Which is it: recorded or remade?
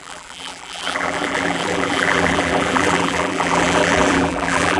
remade